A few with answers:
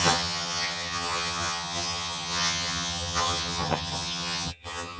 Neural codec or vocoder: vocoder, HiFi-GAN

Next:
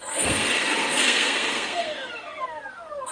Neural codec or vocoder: codec, SNAC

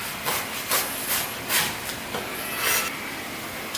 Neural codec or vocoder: none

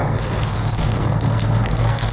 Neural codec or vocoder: codec, SNAC